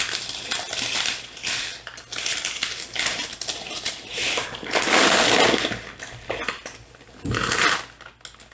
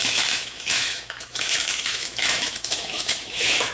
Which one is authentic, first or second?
first